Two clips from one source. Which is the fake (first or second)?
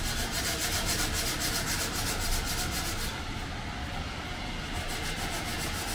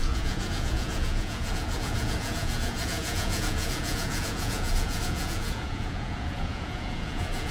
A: second